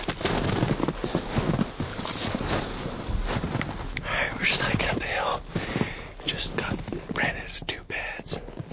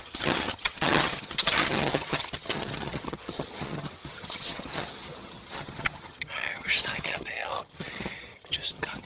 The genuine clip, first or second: first